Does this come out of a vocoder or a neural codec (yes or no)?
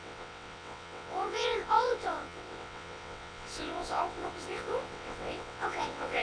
yes